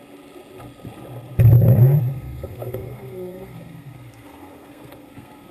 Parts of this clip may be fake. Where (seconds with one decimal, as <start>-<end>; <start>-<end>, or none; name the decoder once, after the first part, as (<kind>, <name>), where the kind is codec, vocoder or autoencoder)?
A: 2.1-5.5 (codec, SNAC)